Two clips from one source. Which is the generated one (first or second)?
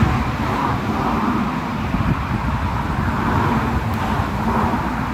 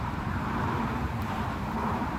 second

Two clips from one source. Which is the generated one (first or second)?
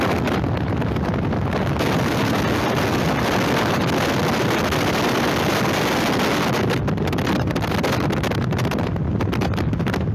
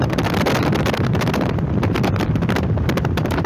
second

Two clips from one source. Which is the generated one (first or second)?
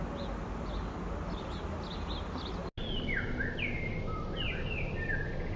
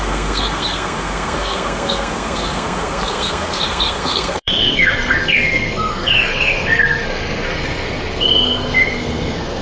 second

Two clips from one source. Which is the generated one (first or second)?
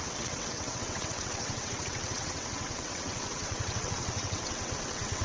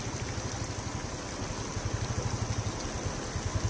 first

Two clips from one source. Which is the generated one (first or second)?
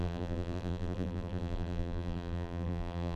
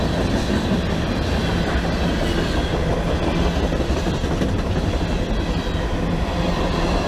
first